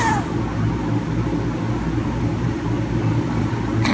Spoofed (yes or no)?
no